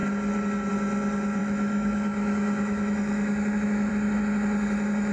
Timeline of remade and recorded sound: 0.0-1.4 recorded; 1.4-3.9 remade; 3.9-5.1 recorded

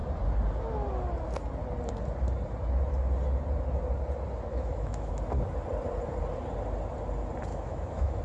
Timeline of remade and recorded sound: 0.0-4.5 recorded; 4.5-5.1 remade; 5.1-7.5 recorded; 7.5-8.2 remade

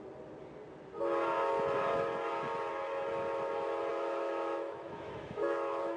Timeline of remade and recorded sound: 0.0-3.9 recorded; 3.9-6.0 remade

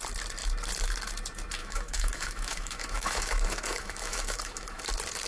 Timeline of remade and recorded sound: 0.0-1.6 recorded; 1.6-4.8 remade; 4.8-5.3 recorded

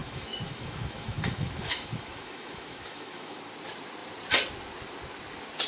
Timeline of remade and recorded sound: 0.0-3.4 remade; 3.4-5.7 recorded

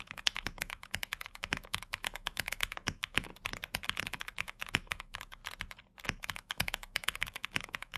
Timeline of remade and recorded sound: 0.0-3.3 remade; 3.3-4.0 recorded; 4.0-5.4 remade; 5.4-6.0 recorded; 6.0-8.0 remade

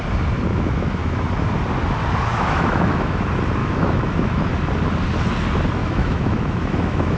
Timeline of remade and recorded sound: 0.0-0.5 recorded; 0.5-1.3 remade; 1.3-2.3 recorded; 2.3-3.2 remade; 3.2-3.6 recorded; 3.6-4.5 remade; 4.5-5.8 recorded; 5.8-7.2 remade